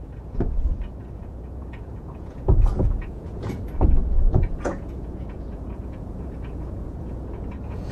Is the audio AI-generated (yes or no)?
yes